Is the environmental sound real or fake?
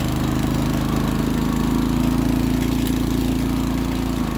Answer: real